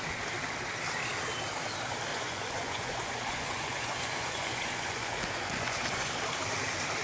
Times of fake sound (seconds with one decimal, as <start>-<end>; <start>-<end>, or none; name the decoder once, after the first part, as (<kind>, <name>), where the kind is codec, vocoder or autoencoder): 2.1-6.1 (vocoder, Vocos)